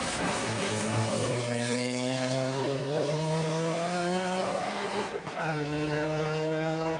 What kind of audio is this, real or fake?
fake